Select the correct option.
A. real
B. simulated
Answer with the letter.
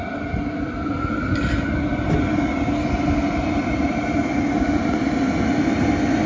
A